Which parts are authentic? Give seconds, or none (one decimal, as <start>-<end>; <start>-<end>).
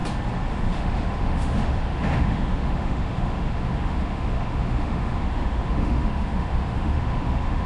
0.0-0.5